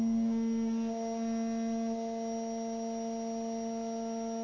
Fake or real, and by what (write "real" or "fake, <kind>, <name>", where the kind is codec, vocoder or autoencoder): real